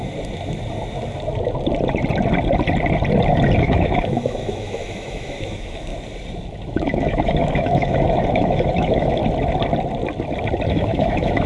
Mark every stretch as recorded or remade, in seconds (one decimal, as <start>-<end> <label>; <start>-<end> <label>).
0.0-3.6 recorded; 3.6-5.9 remade; 5.9-6.5 recorded; 6.5-9.2 remade; 9.2-10.7 recorded; 10.7-11.5 remade